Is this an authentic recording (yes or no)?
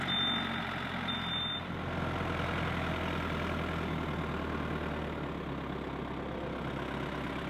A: yes